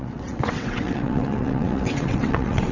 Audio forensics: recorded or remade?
remade